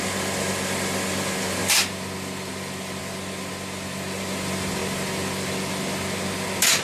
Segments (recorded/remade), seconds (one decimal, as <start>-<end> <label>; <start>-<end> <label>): 0.0-6.8 recorded